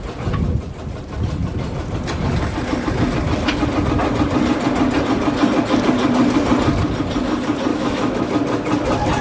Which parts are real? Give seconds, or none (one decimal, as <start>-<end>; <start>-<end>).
0.0-7.7; 8.3-9.2